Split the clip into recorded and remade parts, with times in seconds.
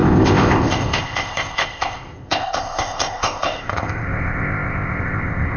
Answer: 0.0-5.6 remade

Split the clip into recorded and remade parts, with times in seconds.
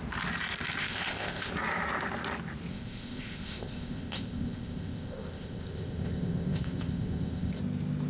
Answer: 0.0-0.8 recorded; 0.8-1.5 remade; 1.5-2.7 recorded; 2.7-7.6 remade; 7.6-8.1 recorded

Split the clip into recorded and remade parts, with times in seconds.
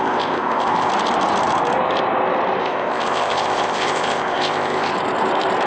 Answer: 0.0-0.9 remade; 0.9-2.6 recorded; 2.6-4.9 remade; 4.9-5.7 recorded